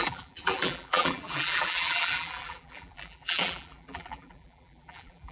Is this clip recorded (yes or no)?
no